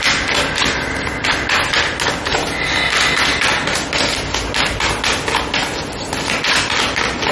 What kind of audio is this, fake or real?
real